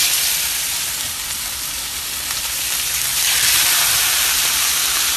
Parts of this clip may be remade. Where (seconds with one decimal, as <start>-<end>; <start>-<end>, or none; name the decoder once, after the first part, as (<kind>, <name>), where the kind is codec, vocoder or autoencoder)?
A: 3.1-4.6 (vocoder, BigVGAN v2)